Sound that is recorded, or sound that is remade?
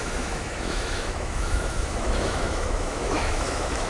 remade